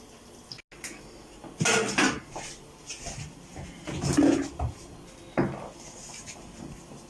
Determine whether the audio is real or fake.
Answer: real